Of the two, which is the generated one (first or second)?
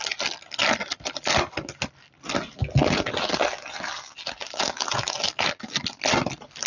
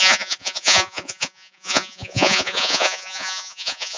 second